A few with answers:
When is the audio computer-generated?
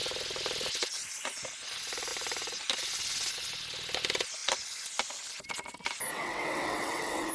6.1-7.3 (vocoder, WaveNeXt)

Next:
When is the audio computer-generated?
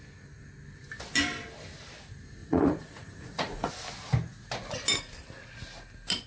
2.4-3.7 (vocoder, Vocos)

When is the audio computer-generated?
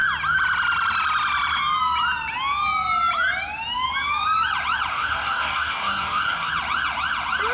4.9-6.5 (codec, DAC)